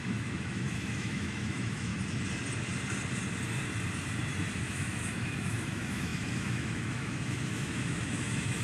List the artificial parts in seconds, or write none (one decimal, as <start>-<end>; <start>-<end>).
0.0-1.9; 4.6-8.6